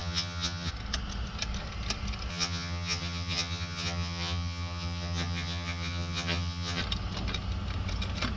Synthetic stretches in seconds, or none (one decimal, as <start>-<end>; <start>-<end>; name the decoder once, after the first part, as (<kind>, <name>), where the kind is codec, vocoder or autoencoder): 0.0-0.7 (vocoder, HiFi-GAN); 2.3-6.8